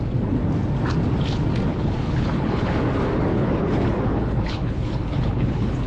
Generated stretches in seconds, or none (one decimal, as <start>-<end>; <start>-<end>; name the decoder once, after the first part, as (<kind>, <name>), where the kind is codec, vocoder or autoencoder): 1.7-2.7 (codec, HILCodec); 3.3-5.9